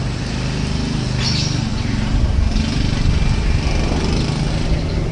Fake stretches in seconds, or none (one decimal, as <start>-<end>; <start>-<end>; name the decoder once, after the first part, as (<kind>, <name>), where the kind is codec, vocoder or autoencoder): none

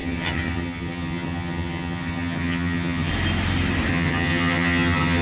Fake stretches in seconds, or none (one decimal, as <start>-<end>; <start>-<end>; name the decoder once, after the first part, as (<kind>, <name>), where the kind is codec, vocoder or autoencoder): 0.0-3.1 (vocoder, HiFi-GAN); 3.9-5.2

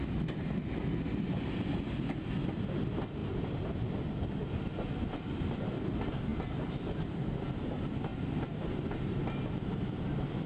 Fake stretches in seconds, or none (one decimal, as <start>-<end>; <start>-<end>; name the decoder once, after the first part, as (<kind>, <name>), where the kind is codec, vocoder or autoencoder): none

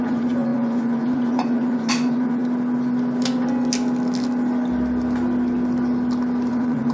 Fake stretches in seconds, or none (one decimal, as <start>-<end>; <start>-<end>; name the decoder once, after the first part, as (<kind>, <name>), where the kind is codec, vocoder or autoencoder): 0.0-2.4 (vocoder, Vocos); 6.5-6.9

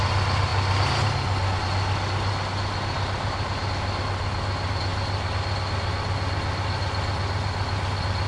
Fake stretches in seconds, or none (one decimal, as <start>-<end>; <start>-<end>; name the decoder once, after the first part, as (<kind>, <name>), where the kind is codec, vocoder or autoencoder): none

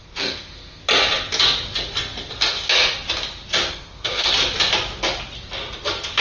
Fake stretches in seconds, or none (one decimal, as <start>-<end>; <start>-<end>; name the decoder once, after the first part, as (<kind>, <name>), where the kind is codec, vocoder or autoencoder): 0.0-0.8 (codec, SNAC); 3.7-4.3

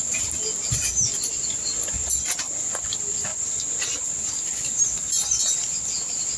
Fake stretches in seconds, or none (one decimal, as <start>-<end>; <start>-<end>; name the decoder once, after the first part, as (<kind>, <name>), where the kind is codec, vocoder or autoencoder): none